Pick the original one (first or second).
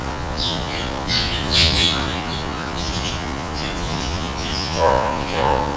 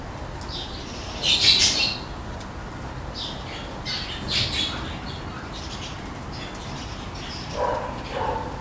second